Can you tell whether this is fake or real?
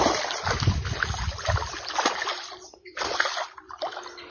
real